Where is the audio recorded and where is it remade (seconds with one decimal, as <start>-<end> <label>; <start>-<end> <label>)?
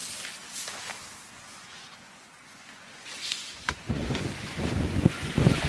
0.0-1.3 recorded; 1.3-5.7 remade